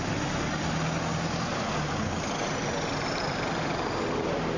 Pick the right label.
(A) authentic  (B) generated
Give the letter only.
A